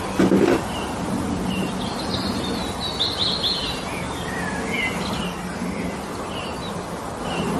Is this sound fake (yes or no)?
no